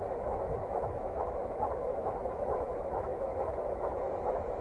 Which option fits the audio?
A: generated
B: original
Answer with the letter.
A